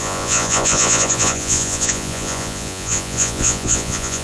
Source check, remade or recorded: remade